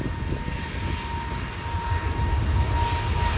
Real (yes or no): yes